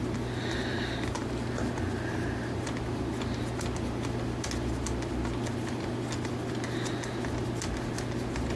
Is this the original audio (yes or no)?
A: yes